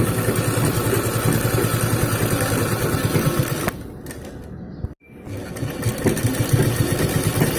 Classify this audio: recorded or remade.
recorded